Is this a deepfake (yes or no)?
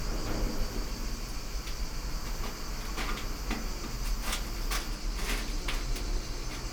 no